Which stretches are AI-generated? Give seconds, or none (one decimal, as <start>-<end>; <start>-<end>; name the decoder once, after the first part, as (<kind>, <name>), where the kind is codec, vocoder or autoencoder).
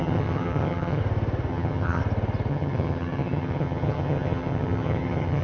0.0-1.0 (vocoder, HiFi-GAN); 1.5-2.0; 2.5-5.4